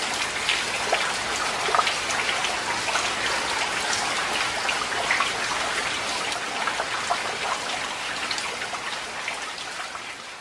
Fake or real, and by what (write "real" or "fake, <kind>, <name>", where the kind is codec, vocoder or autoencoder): real